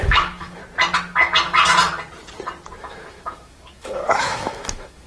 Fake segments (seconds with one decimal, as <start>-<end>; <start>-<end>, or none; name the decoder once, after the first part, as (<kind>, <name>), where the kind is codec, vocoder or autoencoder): 0.0-0.6 (autoencoder, DAC-VAE); 2.8-5.1